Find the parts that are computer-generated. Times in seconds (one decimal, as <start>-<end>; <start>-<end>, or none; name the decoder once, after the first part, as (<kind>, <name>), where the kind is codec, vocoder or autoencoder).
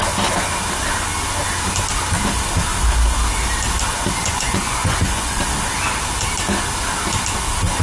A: 4.2-5.4 (vocoder, Vocos)